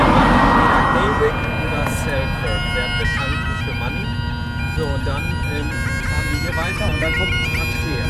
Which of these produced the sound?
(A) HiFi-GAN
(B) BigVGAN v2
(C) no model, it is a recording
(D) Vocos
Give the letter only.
C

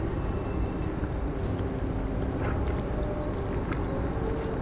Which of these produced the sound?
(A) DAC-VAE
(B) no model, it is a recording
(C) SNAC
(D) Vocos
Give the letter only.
B